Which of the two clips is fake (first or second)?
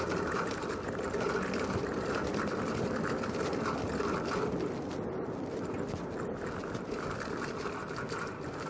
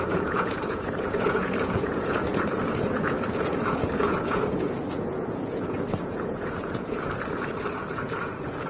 second